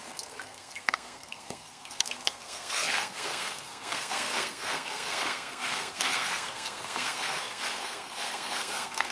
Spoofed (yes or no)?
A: yes